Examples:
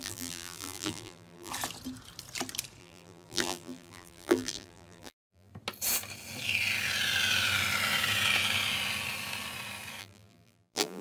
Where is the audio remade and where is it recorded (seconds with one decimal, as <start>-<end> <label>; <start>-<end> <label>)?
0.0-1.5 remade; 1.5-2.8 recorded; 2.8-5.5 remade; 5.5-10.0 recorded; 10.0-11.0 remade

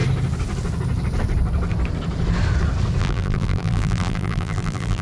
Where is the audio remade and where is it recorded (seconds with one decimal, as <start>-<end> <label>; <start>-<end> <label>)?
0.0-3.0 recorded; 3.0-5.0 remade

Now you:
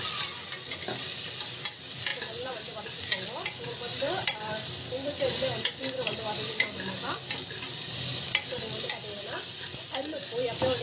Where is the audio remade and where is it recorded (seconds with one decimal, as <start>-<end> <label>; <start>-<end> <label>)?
0.0-2.1 recorded; 2.1-2.8 remade; 2.8-3.9 recorded; 3.9-6.7 remade; 6.7-10.8 recorded